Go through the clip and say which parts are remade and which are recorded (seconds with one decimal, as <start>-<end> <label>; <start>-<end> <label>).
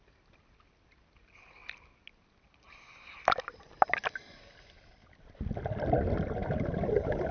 0.0-7.3 recorded